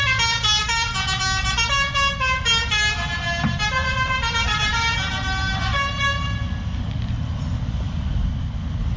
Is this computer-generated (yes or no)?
no